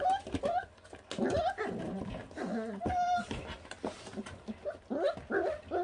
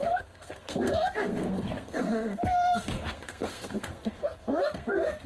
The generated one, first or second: second